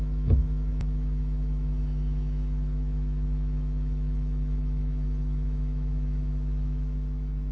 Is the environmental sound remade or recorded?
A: remade